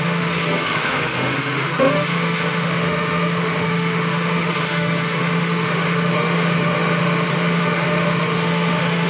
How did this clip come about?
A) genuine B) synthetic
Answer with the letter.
B